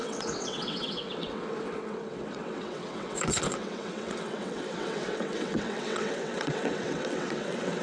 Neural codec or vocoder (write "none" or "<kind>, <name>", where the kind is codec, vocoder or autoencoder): vocoder, WaveNeXt